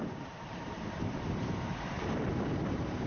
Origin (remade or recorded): remade